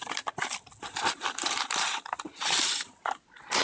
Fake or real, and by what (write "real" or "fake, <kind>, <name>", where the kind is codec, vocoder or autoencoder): real